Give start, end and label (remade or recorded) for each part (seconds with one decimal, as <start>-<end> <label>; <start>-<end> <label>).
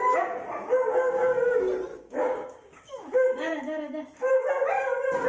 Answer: 0.0-1.9 recorded; 1.9-4.5 remade; 4.5-5.3 recorded